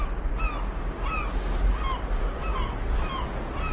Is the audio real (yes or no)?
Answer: yes